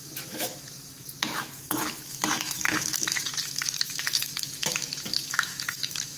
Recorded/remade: remade